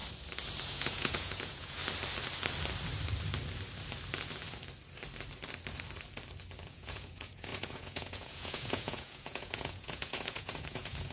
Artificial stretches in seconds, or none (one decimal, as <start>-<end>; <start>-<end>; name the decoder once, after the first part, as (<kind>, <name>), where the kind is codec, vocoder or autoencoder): 0.7-1.8 (vocoder, Vocos); 6.7-11.1